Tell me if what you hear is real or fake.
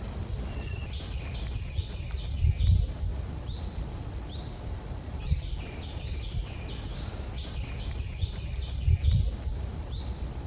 fake